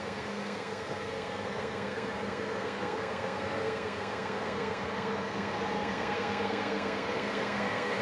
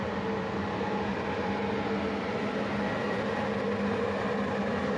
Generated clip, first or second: first